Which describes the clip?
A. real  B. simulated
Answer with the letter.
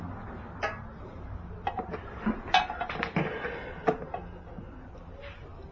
A